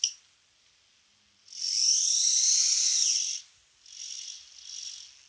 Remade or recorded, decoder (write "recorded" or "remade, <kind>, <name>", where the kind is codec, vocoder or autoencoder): recorded